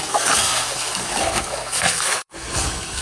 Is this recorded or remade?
remade